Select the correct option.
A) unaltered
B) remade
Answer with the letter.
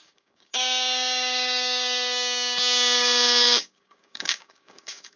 B